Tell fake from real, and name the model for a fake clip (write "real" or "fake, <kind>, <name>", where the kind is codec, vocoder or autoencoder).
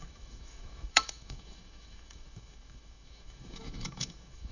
fake, autoencoder, DAC-VAE